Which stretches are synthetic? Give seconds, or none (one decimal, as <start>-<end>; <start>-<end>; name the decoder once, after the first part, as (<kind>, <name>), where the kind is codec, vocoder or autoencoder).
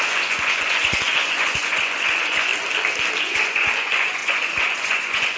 0.0-2.5 (vocoder, Vocos); 3.2-5.4